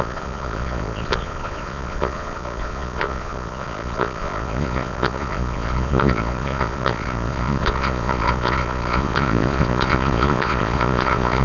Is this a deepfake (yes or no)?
yes